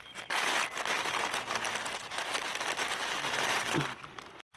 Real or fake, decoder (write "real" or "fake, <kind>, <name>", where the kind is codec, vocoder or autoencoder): real